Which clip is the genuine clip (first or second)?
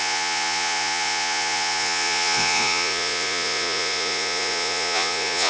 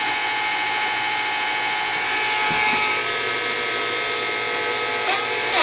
second